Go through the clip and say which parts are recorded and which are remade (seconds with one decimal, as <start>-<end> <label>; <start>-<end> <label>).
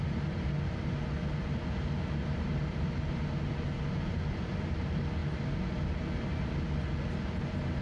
0.0-7.8 recorded